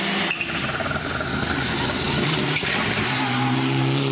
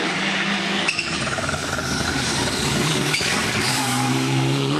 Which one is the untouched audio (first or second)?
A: first